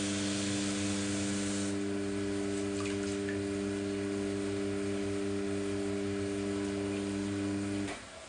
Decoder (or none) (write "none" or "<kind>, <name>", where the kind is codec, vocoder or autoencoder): none